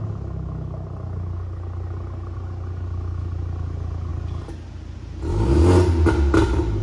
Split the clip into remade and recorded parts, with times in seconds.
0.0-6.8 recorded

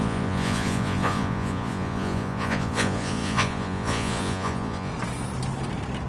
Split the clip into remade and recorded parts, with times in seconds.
0.0-4.9 remade; 4.9-6.1 recorded

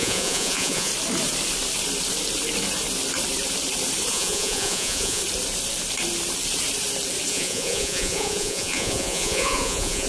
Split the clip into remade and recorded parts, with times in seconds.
0.0-0.9 remade; 0.9-4.1 recorded; 4.1-5.2 remade; 5.2-7.3 recorded; 7.3-10.1 remade

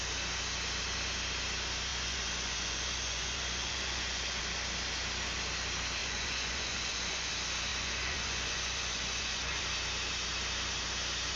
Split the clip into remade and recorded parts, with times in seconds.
0.0-1.9 recorded; 1.9-4.4 remade; 4.4-6.0 recorded; 6.0-7.3 remade; 7.3-7.7 recorded; 7.7-9.6 remade; 9.6-11.4 recorded

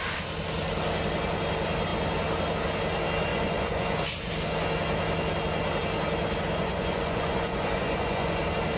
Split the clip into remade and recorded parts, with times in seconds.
0.0-3.3 recorded; 3.3-4.3 remade; 4.3-6.6 recorded; 6.6-8.4 remade; 8.4-8.8 recorded